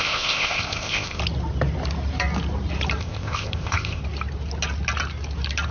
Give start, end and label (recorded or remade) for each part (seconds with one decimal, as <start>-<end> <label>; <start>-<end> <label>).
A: 0.0-1.2 remade; 1.2-3.0 recorded; 3.0-4.0 remade; 4.0-5.7 recorded